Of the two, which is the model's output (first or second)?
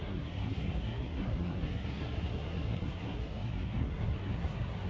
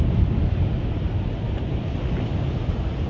first